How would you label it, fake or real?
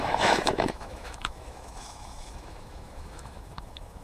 fake